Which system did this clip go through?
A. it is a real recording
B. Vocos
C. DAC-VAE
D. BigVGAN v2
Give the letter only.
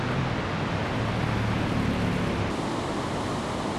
A